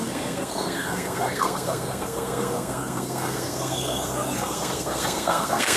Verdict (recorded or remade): remade